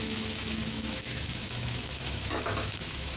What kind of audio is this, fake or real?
fake